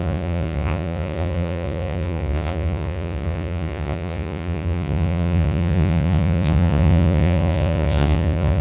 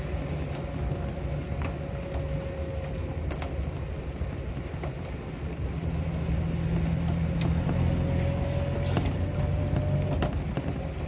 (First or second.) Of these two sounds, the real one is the second